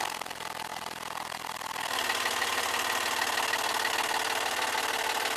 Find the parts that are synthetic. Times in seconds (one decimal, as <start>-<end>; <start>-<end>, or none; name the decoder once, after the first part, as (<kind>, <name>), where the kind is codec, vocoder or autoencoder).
none